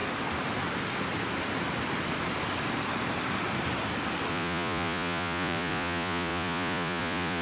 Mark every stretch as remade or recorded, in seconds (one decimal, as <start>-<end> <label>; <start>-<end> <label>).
0.0-4.3 recorded; 4.3-7.4 remade